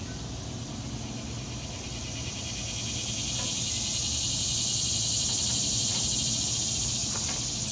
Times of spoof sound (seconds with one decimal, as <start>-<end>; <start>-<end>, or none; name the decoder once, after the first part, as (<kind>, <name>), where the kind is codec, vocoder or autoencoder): none